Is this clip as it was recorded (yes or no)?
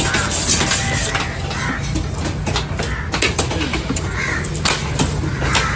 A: yes